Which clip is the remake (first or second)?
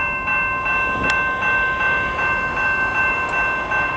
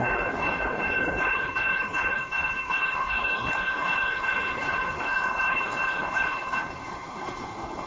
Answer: second